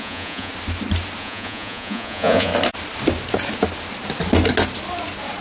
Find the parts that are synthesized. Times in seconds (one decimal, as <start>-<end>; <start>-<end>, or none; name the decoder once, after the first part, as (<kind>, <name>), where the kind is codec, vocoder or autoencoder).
0.0-0.5 (vocoder, Vocos); 1.2-2.5